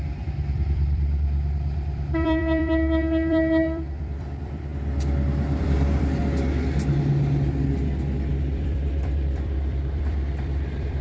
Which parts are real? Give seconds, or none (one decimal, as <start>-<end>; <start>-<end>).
4.7-5.6; 6.2-8.3